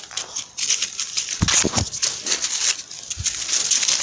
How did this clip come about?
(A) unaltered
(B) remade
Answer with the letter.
A